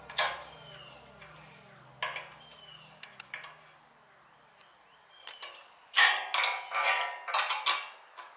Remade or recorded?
recorded